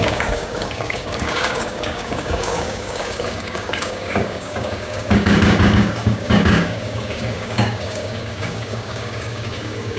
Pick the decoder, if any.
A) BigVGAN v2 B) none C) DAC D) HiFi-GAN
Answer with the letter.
C